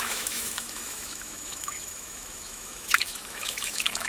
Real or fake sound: fake